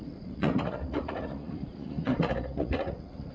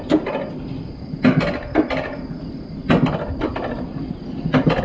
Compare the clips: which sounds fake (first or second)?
first